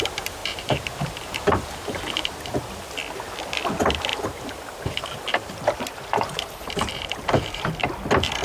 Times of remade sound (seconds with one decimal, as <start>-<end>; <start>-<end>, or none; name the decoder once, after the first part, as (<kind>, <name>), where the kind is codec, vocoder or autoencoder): 0.4-2.4 (vocoder, BigVGAN v2); 4.1-7.6

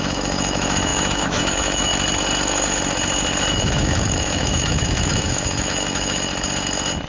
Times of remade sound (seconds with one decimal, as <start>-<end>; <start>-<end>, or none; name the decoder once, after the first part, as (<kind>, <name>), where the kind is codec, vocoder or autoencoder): 0.0-1.9 (autoencoder, DAC-VAE); 3.5-6.3

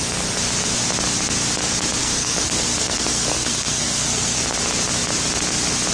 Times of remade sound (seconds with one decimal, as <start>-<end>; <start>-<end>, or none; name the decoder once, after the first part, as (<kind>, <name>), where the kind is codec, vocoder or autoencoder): 2.0-4.4 (codec, SNAC)

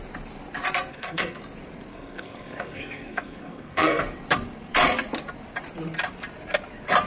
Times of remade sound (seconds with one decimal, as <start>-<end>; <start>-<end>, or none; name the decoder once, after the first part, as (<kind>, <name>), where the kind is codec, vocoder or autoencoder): 0.9-1.4 (codec, SNAC); 1.9-4.0

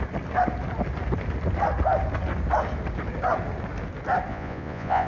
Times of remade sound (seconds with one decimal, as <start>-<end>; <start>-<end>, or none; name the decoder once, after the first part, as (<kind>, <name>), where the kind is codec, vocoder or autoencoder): 4.3-5.1 (vocoder, Vocos)

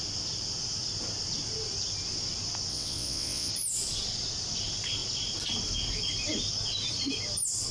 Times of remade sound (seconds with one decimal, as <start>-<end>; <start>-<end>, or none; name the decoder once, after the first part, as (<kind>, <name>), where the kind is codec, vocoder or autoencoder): 2.7-3.5 (vocoder, WaveNeXt)

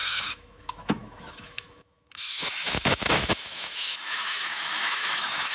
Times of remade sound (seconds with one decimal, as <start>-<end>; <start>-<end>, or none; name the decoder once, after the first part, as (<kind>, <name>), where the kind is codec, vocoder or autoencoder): 0.0-5.5 (autoencoder, DAC-VAE)

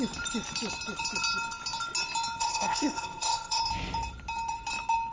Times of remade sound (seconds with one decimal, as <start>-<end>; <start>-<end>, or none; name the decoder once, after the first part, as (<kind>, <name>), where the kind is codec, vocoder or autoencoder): 2.4-3.6 (codec, ZipCodec)